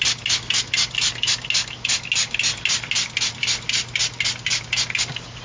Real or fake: real